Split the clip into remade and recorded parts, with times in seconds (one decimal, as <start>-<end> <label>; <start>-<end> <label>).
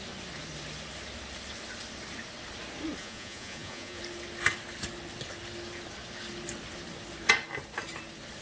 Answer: 0.0-3.0 recorded; 3.0-4.0 remade; 4.0-8.4 recorded